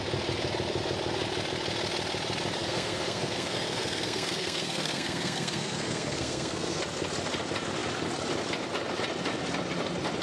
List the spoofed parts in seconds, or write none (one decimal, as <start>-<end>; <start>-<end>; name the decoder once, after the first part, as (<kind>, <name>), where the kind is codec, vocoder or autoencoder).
2.6-6.8 (codec, SNAC)